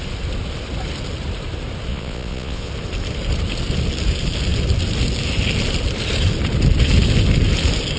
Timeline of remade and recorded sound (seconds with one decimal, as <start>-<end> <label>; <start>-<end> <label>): 0.0-1.9 recorded; 1.9-2.7 remade; 2.7-8.0 recorded